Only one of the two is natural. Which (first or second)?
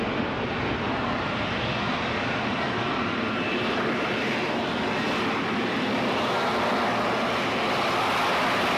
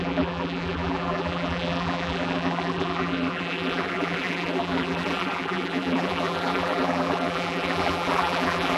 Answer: first